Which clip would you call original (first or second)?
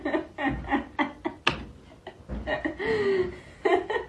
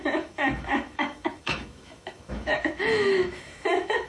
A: first